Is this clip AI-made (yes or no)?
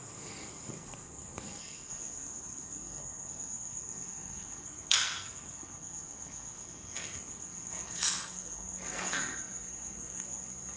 yes